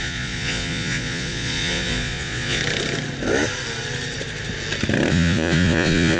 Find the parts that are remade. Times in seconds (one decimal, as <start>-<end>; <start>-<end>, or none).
0.0-2.6; 5.1-6.2